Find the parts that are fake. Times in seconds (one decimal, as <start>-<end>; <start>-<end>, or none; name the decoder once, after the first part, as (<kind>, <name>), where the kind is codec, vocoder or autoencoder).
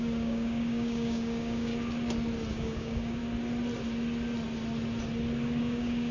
0.0-1.7 (codec, DAC); 2.5-3.2; 5.6-6.1